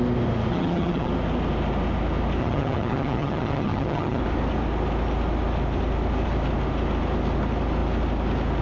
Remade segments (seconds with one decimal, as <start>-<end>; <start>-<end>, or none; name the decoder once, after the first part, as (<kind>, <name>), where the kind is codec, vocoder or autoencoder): 0.5-1.1 (vocoder, HiFi-GAN); 2.4-4.2